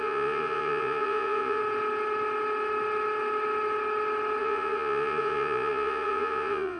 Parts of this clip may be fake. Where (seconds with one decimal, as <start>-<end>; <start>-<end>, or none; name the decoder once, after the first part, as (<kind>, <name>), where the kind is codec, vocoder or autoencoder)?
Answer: 0.0-1.6 (vocoder, Vocos); 4.4-6.8